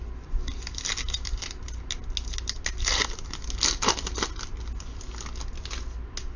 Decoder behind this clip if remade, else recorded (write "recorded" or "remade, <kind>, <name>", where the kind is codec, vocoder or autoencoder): recorded